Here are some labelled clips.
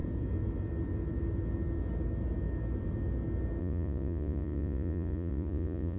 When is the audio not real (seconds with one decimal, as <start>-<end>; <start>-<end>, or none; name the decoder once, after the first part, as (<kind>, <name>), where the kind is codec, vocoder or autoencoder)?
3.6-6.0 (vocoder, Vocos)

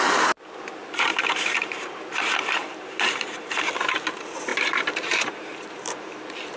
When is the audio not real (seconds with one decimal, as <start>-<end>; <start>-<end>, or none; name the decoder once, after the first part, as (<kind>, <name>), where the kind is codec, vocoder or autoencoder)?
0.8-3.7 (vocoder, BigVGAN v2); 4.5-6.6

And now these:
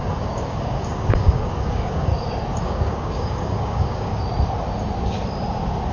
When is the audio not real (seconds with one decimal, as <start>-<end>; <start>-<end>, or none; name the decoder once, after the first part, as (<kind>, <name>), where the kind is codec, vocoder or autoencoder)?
0.0-2.1 (codec, DAC); 2.6-4.1

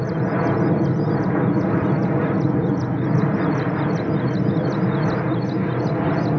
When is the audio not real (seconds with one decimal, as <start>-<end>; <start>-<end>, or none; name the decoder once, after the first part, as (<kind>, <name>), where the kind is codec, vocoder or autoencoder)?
none

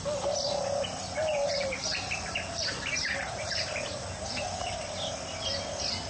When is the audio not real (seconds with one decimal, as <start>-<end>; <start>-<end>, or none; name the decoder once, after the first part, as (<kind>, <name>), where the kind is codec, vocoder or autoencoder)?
1.2-4.9 (vocoder, BigVGAN v2)